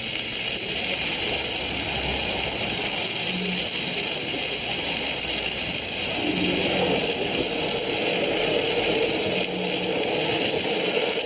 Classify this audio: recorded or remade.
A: recorded